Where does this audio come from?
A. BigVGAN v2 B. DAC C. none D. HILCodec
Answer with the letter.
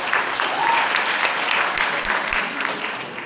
A